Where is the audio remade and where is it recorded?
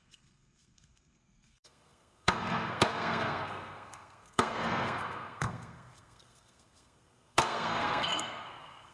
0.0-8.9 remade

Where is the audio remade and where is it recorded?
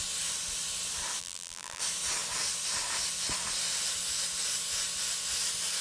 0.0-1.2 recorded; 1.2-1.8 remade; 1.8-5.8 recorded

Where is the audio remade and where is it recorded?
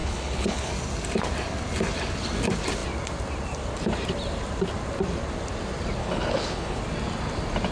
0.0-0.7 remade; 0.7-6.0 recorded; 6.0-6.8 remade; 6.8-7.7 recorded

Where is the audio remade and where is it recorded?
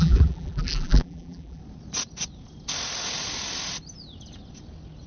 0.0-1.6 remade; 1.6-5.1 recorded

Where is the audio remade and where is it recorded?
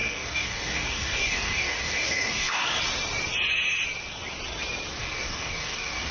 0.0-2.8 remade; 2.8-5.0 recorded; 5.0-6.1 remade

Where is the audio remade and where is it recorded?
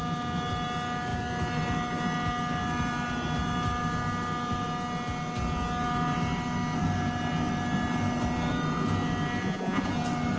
0.0-9.4 recorded; 9.4-9.9 remade; 9.9-10.4 recorded